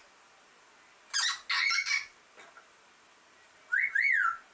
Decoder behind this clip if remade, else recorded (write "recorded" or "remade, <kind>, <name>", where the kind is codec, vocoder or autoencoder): recorded